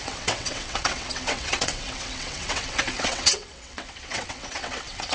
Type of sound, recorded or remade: remade